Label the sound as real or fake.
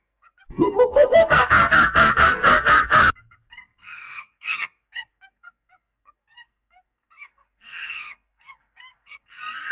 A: fake